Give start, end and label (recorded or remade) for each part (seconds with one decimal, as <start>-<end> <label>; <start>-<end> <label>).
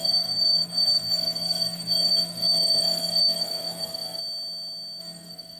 0.0-4.2 remade; 4.2-5.0 recorded; 5.0-5.6 remade